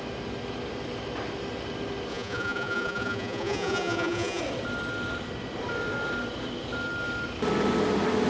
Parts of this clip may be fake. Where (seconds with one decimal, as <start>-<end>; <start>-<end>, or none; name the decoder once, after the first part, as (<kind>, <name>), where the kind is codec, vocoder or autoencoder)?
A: 2.1-4.4 (vocoder, Vocos)